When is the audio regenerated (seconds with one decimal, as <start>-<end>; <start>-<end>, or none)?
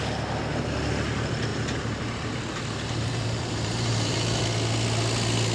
1.5-4.4